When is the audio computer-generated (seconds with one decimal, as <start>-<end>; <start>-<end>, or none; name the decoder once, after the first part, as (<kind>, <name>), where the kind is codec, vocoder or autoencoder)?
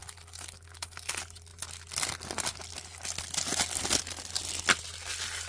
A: none